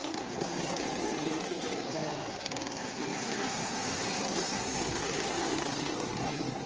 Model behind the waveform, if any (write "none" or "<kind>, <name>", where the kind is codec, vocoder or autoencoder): codec, SNAC